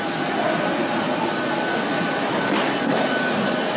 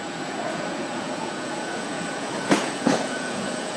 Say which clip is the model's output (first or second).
second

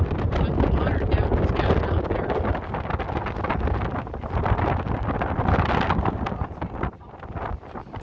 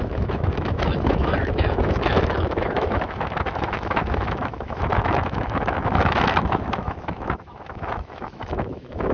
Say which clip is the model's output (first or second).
second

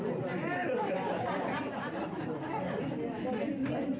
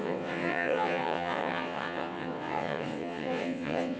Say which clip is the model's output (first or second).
second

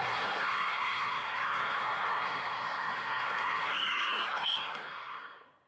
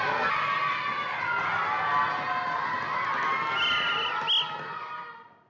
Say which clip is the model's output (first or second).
first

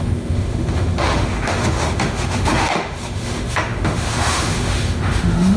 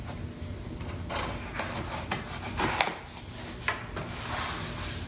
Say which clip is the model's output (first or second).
first